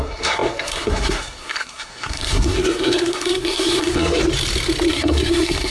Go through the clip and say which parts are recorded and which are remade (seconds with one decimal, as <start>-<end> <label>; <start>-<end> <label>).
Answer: 0.0-4.2 remade; 4.2-4.9 recorded; 4.9-5.7 remade

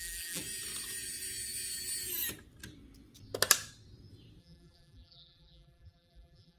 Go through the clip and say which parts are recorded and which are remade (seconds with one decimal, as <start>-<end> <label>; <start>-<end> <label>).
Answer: 0.0-0.4 remade; 0.4-4.4 recorded; 4.4-6.6 remade

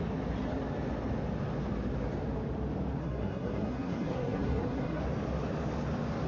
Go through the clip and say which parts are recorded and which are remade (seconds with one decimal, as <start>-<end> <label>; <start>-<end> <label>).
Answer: 0.0-3.0 recorded; 3.0-5.0 remade; 5.0-6.3 recorded

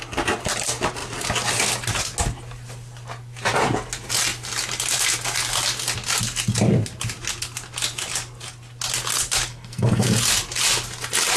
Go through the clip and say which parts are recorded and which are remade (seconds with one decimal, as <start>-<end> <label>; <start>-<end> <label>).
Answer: 0.0-9.5 recorded; 9.5-10.2 remade; 10.2-11.4 recorded

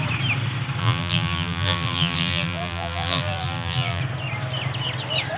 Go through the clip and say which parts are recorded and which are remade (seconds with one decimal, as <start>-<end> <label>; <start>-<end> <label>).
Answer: 0.0-0.8 recorded; 0.8-4.0 remade; 4.0-5.4 recorded

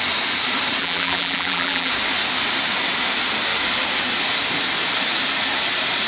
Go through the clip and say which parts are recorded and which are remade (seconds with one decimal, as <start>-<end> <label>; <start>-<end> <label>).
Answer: 0.0-0.8 recorded; 0.8-1.9 remade; 1.9-6.1 recorded